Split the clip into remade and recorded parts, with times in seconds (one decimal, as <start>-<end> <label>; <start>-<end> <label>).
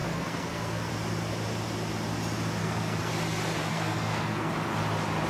0.0-0.9 remade; 0.9-2.6 recorded; 2.6-3.1 remade; 3.1-3.7 recorded; 3.7-4.5 remade; 4.5-5.3 recorded